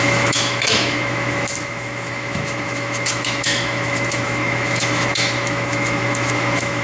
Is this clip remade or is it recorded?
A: remade